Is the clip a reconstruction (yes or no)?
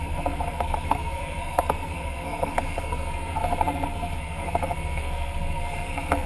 yes